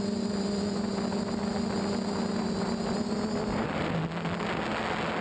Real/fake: real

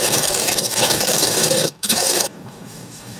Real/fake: fake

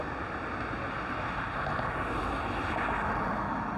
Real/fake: real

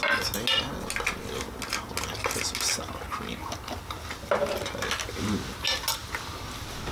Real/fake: real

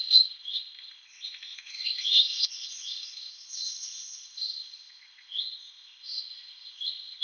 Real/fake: fake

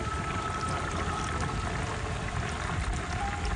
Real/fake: real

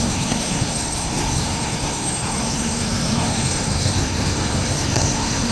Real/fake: fake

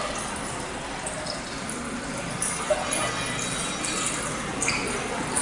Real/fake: real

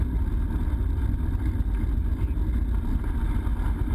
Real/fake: real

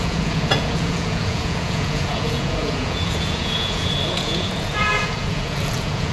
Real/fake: fake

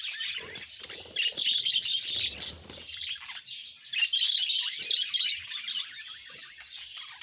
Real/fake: real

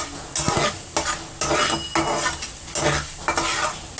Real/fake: real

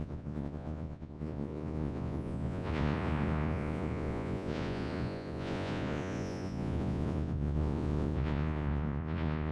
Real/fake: fake